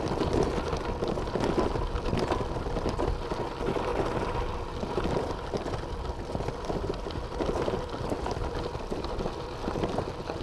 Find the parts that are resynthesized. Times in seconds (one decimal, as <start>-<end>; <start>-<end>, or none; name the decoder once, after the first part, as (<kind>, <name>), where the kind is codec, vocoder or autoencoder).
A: none